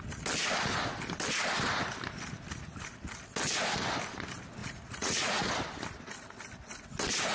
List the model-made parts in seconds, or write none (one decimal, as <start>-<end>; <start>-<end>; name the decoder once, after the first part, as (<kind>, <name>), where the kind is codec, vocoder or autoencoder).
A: 4.6-5.5 (vocoder, Vocos)